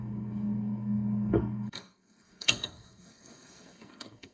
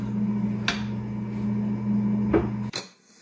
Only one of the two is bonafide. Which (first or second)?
second